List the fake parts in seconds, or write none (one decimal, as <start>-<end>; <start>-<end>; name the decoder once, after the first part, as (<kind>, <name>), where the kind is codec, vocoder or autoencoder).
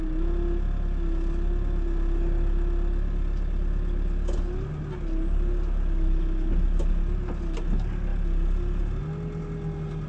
none